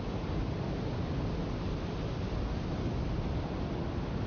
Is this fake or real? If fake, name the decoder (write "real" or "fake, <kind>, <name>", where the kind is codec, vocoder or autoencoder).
real